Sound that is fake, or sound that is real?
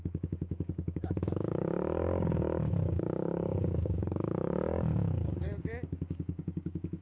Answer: fake